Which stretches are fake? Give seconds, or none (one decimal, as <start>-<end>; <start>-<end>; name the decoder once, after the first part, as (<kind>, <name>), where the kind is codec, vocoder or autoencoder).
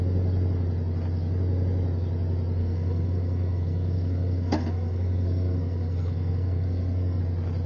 2.6-7.2 (codec, SNAC)